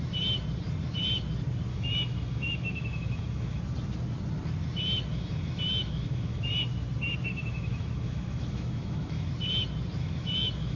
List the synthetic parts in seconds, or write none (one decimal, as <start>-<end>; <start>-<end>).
1.7-3.6; 5.1-6.4; 7.3-9.3; 10.0-10.8